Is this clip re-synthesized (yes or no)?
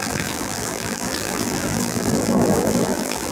yes